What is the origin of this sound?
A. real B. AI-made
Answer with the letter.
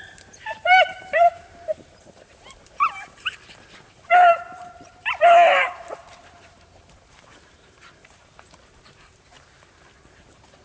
B